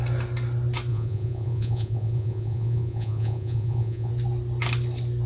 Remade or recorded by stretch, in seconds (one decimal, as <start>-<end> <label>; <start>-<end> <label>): 0.0-0.9 recorded; 0.9-4.1 remade; 4.1-5.3 recorded